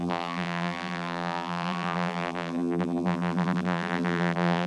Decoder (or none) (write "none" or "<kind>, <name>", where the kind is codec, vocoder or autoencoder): vocoder, BigVGAN v2